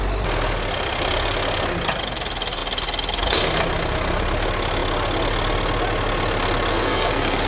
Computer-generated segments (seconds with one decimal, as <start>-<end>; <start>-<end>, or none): 6.7-7.5